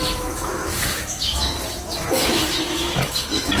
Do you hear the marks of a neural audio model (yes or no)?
yes